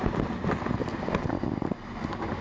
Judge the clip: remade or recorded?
recorded